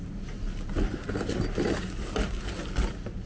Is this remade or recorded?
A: recorded